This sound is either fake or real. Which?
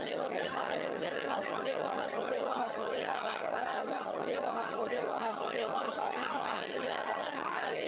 fake